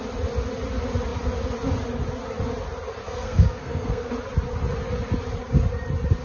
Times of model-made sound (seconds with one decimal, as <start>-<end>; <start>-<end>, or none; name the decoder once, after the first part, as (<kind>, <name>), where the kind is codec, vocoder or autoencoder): 3.0-4.1 (codec, SNAC)